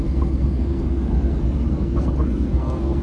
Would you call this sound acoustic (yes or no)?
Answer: no